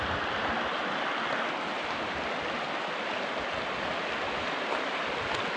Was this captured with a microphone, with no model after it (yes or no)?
yes